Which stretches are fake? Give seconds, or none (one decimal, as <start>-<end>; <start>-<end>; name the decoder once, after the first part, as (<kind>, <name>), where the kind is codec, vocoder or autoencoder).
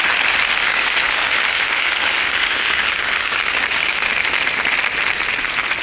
0.6-4.1 (codec, DAC)